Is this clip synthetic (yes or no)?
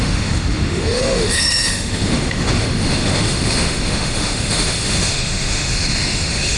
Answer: yes